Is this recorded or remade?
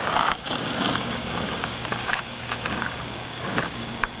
remade